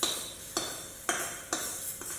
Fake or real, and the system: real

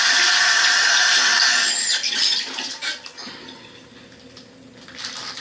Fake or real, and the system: real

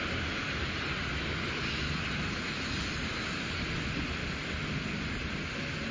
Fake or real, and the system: real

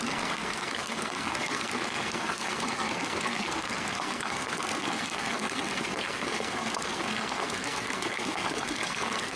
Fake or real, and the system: fake, codec, SNAC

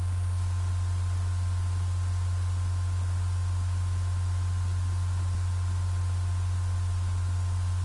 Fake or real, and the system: real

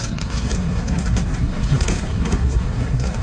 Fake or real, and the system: fake, codec, SNAC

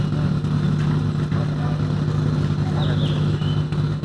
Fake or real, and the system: real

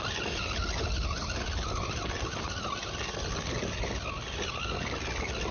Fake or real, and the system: real